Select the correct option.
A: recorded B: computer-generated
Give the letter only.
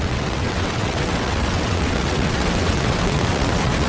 B